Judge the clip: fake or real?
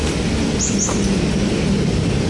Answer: real